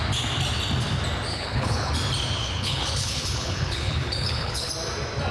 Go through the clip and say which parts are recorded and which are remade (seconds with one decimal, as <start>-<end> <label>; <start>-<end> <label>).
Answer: 0.0-1.3 recorded; 1.3-1.9 remade; 1.9-2.4 recorded; 2.4-4.7 remade; 4.7-5.3 recorded